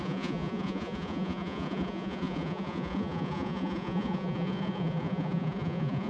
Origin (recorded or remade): remade